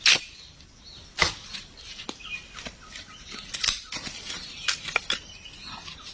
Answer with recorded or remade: recorded